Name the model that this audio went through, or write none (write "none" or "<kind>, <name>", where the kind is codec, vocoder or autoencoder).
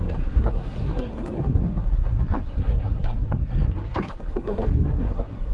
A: codec, SNAC